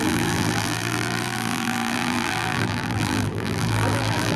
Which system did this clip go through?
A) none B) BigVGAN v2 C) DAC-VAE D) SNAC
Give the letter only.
B